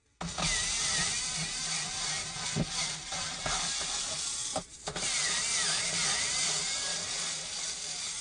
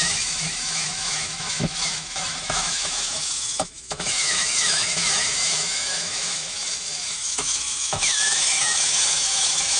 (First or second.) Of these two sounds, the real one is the first